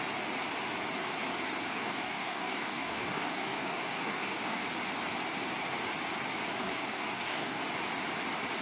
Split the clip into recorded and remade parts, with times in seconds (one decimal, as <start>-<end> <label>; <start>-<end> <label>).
0.0-1.7 recorded; 1.7-4.6 remade; 4.6-6.6 recorded; 6.6-7.6 remade; 7.6-8.6 recorded